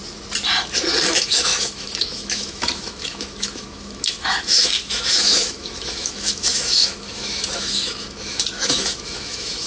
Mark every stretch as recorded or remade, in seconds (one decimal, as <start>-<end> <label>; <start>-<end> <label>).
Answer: 0.0-1.1 recorded; 1.1-9.7 remade